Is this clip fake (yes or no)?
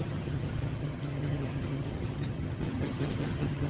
yes